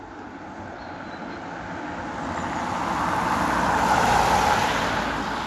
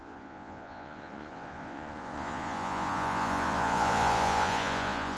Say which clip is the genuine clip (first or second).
first